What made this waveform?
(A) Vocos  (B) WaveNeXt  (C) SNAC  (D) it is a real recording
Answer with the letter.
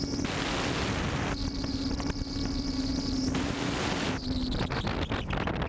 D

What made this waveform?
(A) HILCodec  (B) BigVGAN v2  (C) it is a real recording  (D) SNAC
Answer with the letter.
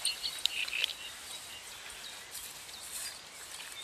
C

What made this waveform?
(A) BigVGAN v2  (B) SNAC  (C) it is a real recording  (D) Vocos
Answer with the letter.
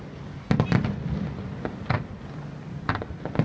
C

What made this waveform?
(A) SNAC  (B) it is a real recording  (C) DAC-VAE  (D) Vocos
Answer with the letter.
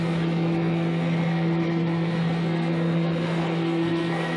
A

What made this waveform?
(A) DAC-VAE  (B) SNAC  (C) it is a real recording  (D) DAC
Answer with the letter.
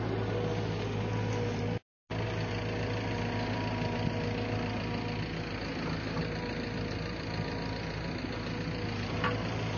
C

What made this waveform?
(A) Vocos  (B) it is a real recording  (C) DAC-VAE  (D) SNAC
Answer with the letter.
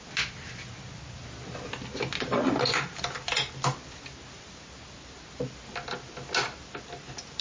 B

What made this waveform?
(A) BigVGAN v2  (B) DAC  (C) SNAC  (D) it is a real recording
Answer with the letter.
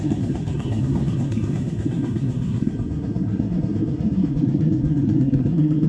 C